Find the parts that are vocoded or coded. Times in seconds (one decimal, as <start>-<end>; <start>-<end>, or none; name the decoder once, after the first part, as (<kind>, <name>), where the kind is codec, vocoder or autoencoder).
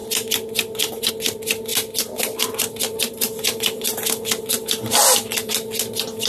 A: none